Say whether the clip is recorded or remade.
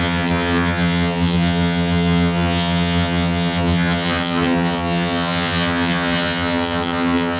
remade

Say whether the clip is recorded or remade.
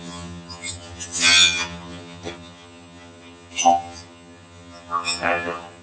remade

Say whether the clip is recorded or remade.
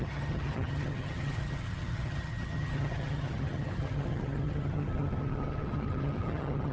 remade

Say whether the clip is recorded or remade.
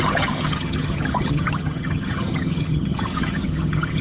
remade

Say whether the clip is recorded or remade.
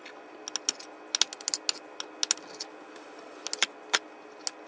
recorded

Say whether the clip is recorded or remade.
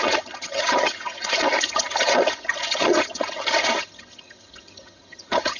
remade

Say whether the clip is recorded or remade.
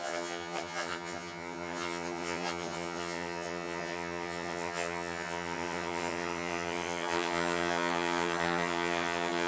remade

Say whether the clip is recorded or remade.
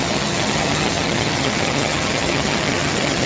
remade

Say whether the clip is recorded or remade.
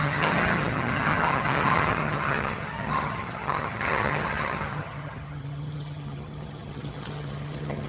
remade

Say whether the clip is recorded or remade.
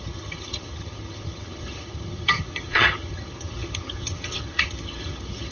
remade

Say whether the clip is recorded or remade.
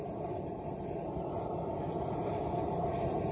recorded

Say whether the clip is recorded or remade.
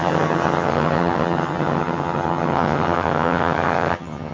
remade